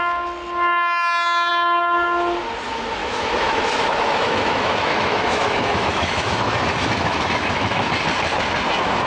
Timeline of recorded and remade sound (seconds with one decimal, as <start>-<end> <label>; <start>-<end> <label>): 0.0-3.0 recorded; 3.0-7.9 remade; 7.9-9.1 recorded